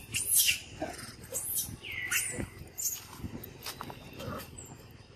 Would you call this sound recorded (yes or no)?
yes